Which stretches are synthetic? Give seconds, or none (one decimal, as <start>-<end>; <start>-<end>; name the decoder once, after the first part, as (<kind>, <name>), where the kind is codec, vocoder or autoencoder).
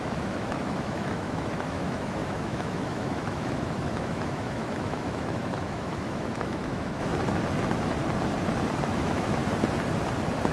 0.0-7.1 (autoencoder, DAC-VAE); 8.9-9.4